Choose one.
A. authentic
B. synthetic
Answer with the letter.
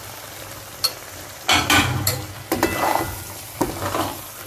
A